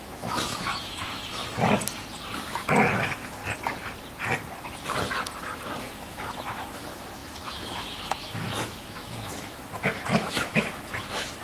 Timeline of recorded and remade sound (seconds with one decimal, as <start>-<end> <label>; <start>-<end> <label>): 0.0-1.4 remade; 1.4-3.0 recorded; 3.0-3.4 remade; 3.4-5.8 recorded; 5.8-11.4 remade